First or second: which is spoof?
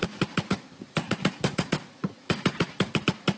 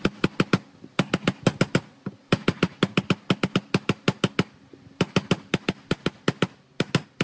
first